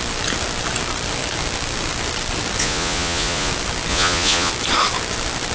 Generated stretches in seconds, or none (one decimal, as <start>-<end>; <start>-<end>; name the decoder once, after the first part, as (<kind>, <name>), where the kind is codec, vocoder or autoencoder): 2.6-3.5 (vocoder, Vocos); 3.9-4.5